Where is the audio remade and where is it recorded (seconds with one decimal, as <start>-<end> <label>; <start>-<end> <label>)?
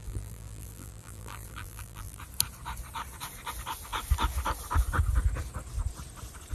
0.0-2.2 remade; 2.2-6.5 recorded